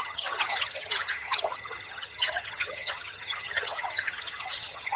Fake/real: fake